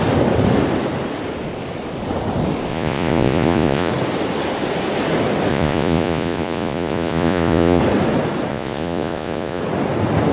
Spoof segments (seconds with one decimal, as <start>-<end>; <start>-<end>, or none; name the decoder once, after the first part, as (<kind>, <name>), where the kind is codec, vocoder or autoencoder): 2.7-3.9 (vocoder, Vocos); 5.5-7.8; 8.5-9.6